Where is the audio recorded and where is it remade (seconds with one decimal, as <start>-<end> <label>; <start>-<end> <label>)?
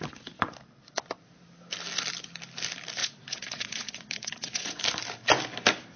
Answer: 0.0-3.0 recorded; 3.0-4.8 remade; 4.8-6.0 recorded